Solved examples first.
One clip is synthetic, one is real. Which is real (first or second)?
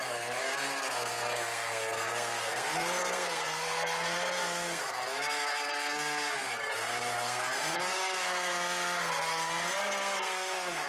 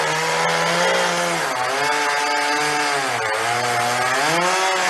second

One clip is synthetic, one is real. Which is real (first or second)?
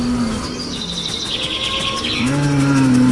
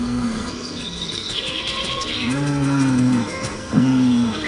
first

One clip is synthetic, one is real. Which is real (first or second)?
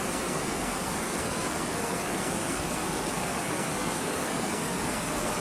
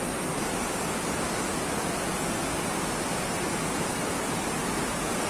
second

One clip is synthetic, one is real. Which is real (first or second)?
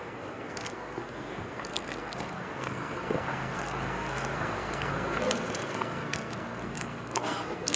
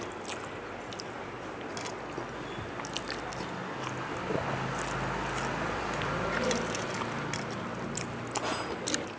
second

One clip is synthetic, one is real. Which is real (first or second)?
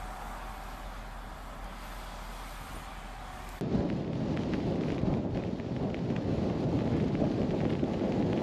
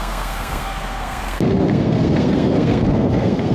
first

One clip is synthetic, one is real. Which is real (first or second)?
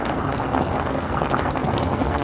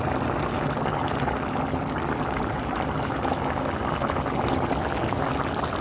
second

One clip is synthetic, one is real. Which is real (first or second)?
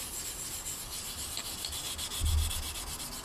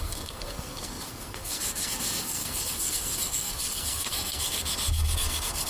first